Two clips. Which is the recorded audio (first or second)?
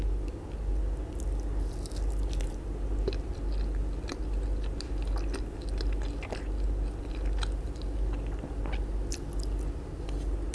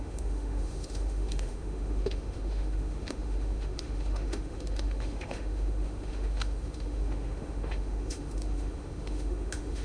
first